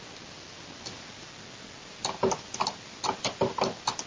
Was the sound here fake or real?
real